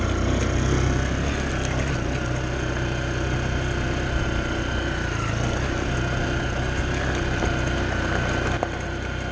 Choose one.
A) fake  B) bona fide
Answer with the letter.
B